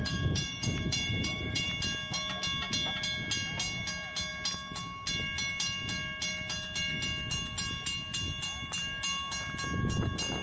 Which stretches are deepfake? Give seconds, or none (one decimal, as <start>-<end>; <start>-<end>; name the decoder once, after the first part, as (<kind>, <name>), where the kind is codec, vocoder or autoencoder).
0.0-1.7 (vocoder, BigVGAN v2)